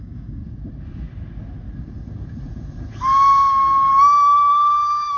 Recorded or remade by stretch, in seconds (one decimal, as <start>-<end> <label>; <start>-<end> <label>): 0.0-0.4 remade; 0.4-3.5 recorded; 3.5-5.2 remade